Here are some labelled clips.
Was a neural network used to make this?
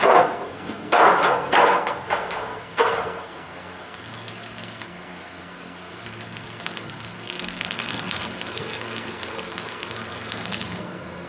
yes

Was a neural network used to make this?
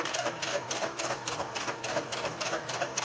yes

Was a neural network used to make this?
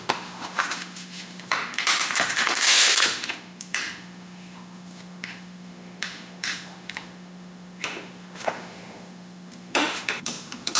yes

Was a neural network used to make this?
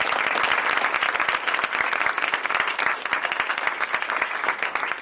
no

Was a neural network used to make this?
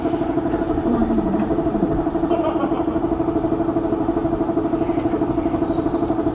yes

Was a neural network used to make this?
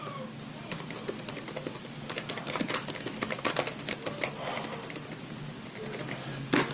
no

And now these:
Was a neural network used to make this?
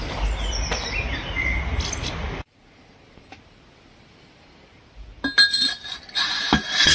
no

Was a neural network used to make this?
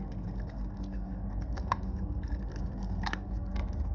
yes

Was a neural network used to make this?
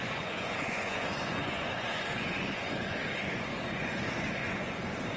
yes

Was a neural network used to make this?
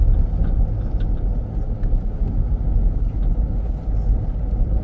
no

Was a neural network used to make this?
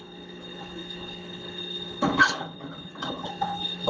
yes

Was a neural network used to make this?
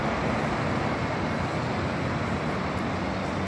no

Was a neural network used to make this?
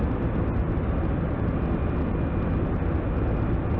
no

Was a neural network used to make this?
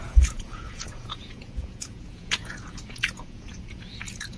yes